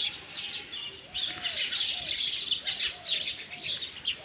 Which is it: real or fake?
real